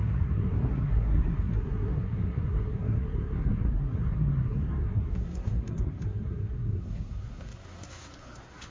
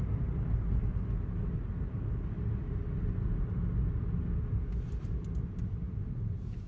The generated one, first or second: first